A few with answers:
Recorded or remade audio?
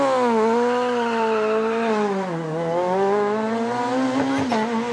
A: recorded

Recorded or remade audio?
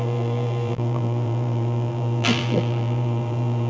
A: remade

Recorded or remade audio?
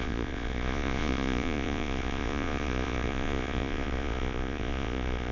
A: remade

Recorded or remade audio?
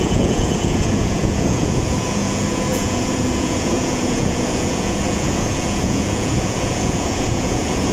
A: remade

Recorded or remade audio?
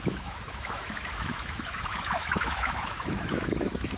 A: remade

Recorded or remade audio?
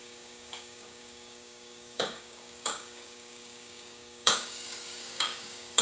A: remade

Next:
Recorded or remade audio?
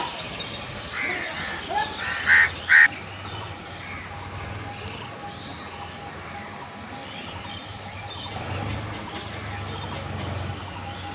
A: recorded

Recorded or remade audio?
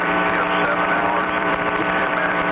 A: remade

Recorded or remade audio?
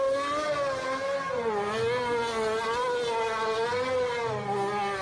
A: recorded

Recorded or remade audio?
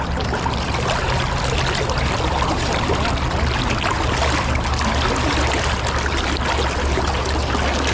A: recorded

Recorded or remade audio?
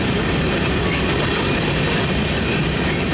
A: recorded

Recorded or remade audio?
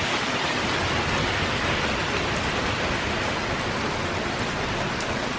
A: recorded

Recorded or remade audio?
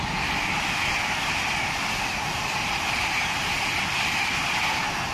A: remade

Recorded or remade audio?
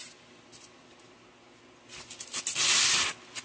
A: recorded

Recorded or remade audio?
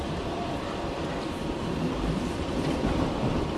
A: remade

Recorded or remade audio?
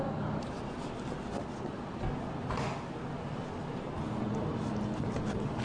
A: recorded